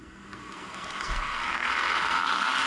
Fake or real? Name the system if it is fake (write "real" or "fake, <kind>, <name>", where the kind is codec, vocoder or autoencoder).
fake, codec, SNAC